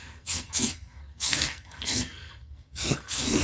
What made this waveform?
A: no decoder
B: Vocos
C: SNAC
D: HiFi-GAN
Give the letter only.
C